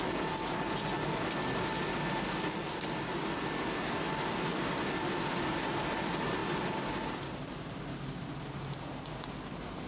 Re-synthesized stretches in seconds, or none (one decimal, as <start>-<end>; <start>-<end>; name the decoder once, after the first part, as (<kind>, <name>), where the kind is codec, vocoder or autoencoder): none